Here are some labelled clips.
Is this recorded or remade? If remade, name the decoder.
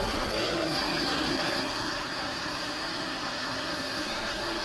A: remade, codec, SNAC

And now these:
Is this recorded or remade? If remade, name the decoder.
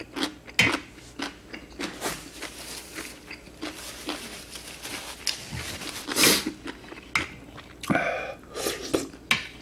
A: recorded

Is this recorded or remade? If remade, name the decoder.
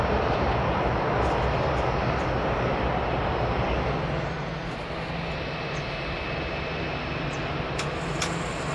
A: recorded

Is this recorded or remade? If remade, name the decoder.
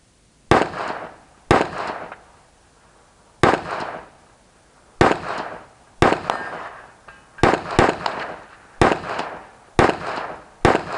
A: recorded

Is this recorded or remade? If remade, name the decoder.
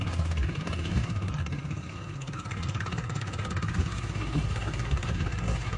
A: remade, codec, SNAC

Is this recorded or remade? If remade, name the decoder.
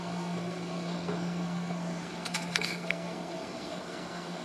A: remade, codec, SNAC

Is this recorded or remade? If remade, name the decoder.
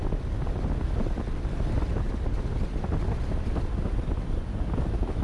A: recorded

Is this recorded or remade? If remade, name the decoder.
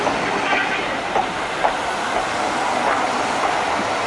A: recorded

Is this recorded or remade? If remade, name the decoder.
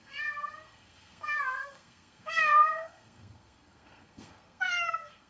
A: remade, codec, SNAC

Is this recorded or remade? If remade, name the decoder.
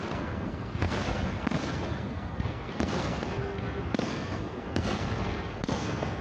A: remade, codec, SNAC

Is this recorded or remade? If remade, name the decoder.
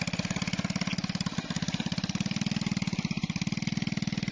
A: recorded